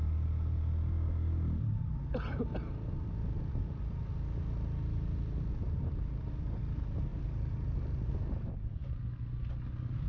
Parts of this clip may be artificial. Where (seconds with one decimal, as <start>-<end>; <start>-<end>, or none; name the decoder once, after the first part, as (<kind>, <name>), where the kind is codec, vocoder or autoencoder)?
none